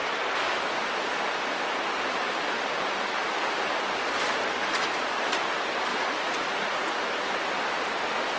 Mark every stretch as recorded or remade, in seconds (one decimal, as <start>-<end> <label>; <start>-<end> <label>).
0.0-4.6 recorded; 4.6-5.1 remade; 5.1-5.9 recorded; 5.9-7.0 remade; 7.0-8.4 recorded